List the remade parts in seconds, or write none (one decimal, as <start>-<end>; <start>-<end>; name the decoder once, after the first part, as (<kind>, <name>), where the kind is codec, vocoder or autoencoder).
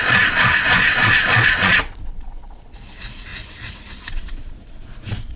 0.0-3.3 (vocoder, Vocos); 3.9-5.4